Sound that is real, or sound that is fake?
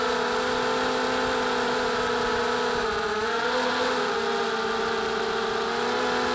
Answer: real